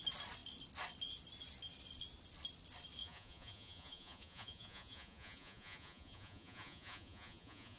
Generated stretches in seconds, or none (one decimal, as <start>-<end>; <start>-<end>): 3.0-7.8